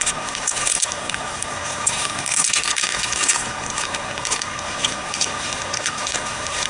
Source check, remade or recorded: remade